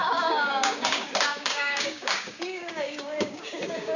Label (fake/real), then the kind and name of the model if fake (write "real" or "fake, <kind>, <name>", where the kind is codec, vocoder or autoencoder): fake, codec, DAC